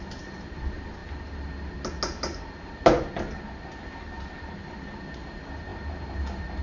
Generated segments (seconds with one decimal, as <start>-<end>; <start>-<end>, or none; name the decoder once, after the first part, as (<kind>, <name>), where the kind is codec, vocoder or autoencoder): 0.0-1.0 (vocoder, BigVGAN v2); 3.8-5.7